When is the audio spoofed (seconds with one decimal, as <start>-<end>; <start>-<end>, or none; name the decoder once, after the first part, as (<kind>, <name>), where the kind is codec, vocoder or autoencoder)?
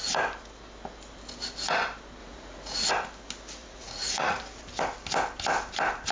2.2-2.9 (vocoder, Vocos); 3.6-4.4